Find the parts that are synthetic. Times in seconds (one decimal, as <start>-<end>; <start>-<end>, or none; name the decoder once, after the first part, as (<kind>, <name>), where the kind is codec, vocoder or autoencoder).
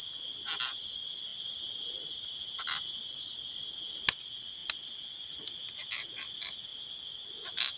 none